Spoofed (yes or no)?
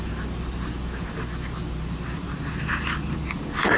no